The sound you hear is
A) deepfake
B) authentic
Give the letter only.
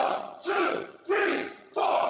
A